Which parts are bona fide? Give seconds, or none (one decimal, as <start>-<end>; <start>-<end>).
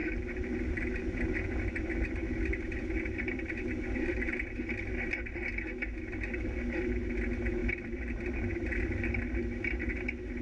1.0-2.2; 4.6-7.6; 9.1-10.4